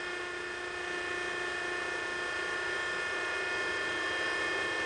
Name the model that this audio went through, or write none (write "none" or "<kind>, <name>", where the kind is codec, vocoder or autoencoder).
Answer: none